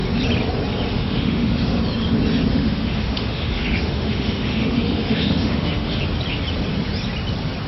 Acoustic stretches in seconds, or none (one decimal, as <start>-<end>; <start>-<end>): 0.0-0.9; 1.8-2.5; 6.0-7.7